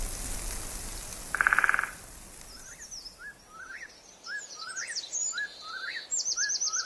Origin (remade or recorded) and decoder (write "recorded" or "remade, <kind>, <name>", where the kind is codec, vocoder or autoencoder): recorded